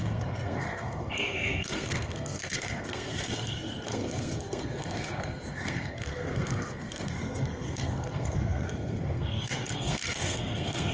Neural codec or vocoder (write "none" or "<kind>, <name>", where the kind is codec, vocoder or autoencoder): codec, SNAC